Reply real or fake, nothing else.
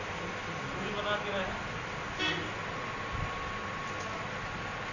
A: real